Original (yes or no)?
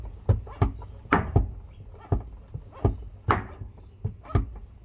yes